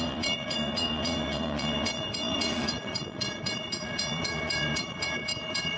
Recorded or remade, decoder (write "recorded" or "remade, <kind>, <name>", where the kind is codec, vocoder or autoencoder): remade, vocoder, Vocos